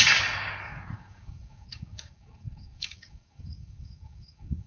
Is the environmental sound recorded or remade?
remade